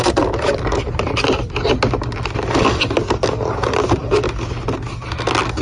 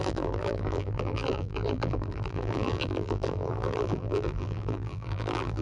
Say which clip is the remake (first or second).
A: second